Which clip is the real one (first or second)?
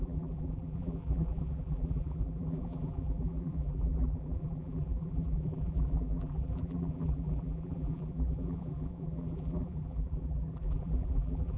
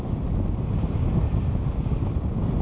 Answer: second